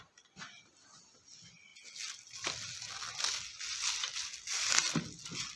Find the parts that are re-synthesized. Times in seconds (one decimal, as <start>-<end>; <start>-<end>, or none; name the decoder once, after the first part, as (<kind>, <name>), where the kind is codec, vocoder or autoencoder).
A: none